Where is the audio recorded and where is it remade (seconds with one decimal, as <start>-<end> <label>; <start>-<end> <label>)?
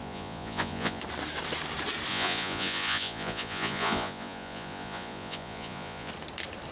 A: 0.0-1.0 remade; 1.0-2.1 recorded; 2.1-6.1 remade; 6.1-6.7 recorded